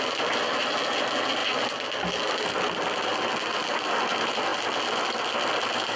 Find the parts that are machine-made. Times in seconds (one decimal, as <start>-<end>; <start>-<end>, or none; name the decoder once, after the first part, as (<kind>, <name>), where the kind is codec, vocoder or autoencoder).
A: none